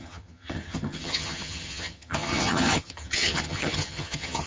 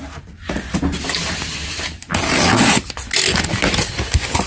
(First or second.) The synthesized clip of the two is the first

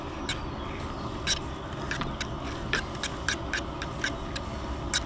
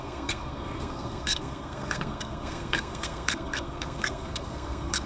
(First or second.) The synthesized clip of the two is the second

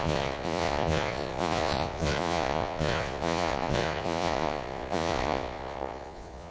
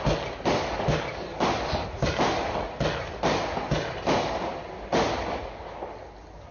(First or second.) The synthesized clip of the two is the first